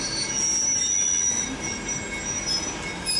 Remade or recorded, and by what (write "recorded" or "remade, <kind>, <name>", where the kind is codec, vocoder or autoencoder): recorded